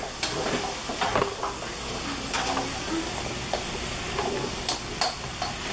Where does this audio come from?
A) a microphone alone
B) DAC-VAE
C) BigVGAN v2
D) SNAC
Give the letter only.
A